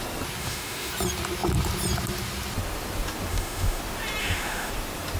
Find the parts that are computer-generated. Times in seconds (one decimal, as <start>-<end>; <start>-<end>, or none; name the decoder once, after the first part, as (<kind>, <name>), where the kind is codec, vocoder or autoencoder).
0.4-0.9 (autoencoder, DAC-VAE); 3.3-3.8; 4.2-4.7